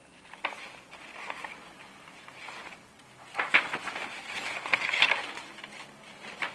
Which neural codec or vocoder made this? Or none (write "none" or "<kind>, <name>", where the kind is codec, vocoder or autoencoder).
none